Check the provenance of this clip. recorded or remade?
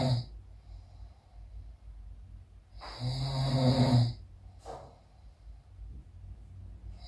recorded